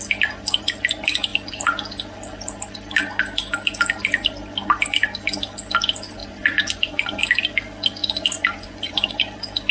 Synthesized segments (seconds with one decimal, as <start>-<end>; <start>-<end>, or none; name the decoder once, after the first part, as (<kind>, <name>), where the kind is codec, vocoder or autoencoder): 6.2-7.2 (vocoder, Vocos); 8.0-9.1